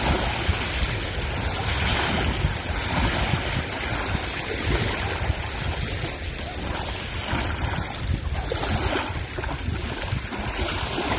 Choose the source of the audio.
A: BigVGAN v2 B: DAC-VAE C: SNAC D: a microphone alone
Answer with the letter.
D